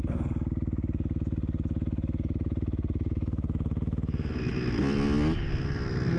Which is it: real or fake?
real